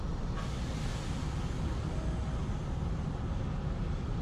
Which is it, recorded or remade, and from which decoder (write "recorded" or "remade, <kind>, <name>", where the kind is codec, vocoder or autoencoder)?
recorded